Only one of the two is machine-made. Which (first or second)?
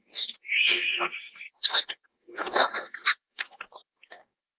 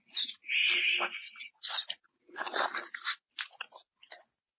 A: first